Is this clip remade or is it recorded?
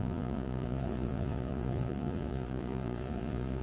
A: remade